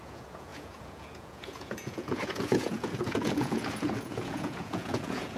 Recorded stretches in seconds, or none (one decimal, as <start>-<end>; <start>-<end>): none